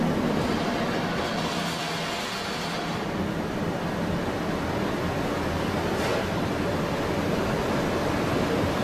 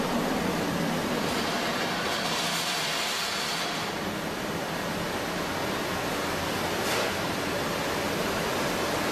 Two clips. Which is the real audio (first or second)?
first